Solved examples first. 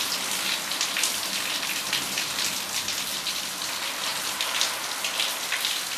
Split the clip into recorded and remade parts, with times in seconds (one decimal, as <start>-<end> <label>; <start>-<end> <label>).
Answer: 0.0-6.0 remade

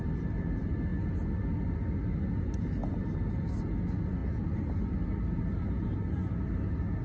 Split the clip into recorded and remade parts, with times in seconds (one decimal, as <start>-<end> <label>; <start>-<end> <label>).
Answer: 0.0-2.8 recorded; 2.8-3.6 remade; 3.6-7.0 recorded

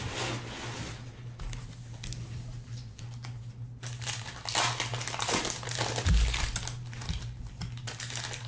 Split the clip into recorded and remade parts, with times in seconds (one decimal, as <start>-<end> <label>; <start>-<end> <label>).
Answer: 0.0-8.5 recorded